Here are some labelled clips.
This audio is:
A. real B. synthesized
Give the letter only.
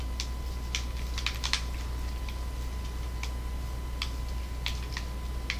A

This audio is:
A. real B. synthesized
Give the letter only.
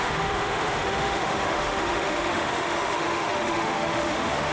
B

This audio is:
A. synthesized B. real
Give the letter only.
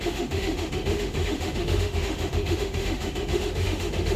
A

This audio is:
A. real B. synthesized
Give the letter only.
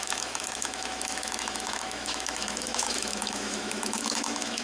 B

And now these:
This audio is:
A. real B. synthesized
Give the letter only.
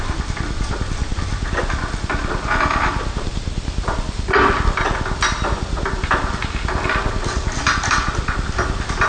A